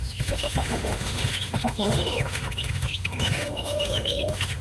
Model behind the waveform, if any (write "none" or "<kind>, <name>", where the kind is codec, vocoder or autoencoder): autoencoder, DAC-VAE